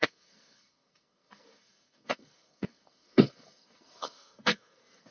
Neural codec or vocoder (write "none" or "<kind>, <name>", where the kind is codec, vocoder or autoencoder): codec, SNAC